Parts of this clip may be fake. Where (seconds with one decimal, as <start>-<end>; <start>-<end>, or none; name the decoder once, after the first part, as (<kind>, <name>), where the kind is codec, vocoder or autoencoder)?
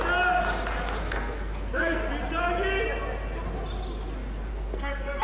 1.0-2.1 (codec, SNAC); 4.5-5.2